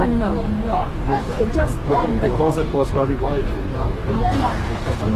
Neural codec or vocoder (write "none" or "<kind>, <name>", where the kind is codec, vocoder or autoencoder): codec, DAC